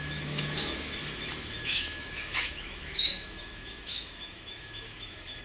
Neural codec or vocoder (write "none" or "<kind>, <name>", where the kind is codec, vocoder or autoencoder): autoencoder, DAC-VAE